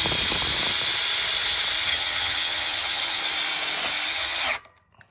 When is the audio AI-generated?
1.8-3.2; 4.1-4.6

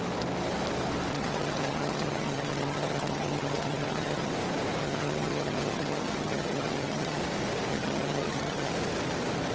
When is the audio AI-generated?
1.1-4.3; 4.8-7.2; 7.7-8.7

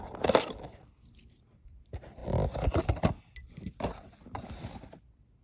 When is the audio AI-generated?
none

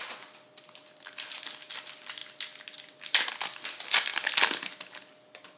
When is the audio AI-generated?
none

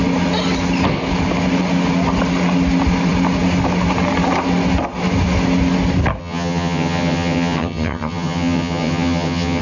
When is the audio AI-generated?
6.2-9.6

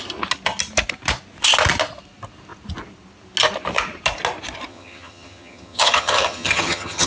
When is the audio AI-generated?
4.7-7.1

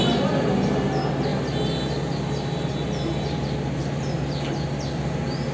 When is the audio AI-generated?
none

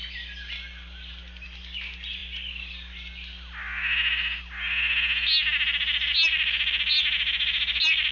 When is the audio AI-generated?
none